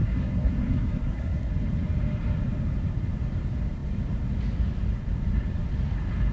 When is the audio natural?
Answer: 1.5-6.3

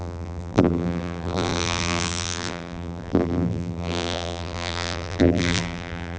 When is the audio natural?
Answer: none